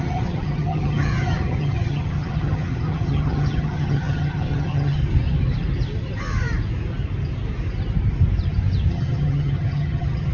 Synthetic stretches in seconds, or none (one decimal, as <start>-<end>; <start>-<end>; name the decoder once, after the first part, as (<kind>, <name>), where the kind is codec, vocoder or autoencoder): 0.0-5.0 (vocoder, HiFi-GAN); 8.9-10.3